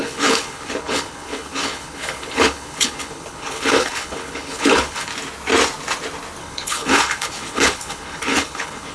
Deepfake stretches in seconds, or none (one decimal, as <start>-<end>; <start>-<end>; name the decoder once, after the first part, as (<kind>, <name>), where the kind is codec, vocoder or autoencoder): 0.0-5.1 (codec, HILCodec); 6.4-8.9